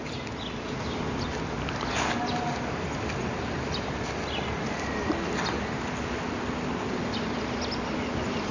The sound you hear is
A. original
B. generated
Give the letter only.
A